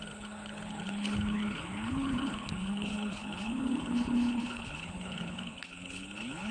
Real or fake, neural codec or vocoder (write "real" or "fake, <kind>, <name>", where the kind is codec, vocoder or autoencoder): fake, codec, HILCodec